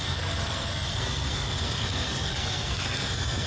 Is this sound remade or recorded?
remade